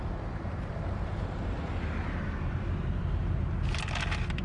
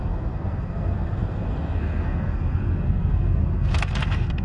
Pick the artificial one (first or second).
second